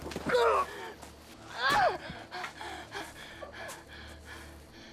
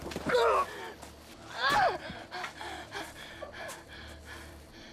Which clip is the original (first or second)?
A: first